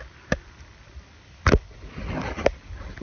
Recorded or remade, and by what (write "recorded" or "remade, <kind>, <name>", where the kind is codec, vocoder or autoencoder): recorded